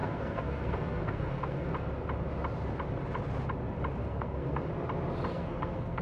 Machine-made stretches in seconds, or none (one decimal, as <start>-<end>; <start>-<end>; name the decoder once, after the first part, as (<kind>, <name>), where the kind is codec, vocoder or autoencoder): 0.0-1.7 (codec, SNAC); 4.0-4.7; 5.3-6.0

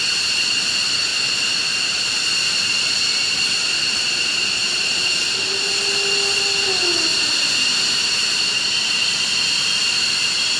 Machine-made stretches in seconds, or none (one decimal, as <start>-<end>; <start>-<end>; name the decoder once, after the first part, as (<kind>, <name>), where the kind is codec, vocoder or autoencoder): none

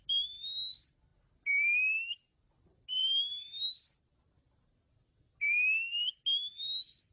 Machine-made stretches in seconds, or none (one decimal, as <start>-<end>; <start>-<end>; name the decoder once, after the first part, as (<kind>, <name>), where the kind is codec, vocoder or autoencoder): none

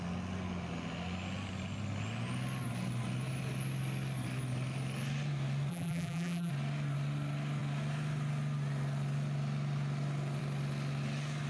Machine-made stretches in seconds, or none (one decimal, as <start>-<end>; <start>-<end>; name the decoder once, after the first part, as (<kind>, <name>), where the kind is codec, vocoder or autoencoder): 5.7-6.5 (vocoder, BigVGAN v2)

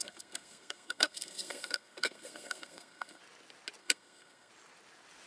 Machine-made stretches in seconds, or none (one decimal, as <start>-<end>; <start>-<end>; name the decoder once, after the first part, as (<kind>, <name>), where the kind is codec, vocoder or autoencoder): 0.0-3.2 (codec, SNAC); 3.8-4.5

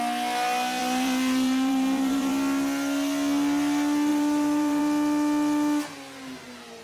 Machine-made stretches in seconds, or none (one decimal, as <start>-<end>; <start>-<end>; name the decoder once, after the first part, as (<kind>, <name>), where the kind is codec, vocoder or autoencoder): 0.8-2.3 (vocoder, BigVGAN v2); 4.1-4.8

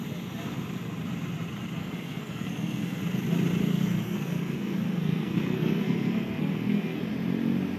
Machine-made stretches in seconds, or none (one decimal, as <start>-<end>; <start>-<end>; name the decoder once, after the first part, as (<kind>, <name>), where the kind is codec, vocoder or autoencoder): 1.8-3.0 (codec, SNAC); 3.6-7.0

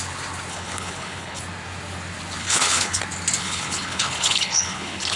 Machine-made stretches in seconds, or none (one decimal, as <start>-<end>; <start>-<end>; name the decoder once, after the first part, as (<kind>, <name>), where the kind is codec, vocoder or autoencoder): 0.5-1.4 (codec, HILCodec); 2.4-3.0; 3.4-5.2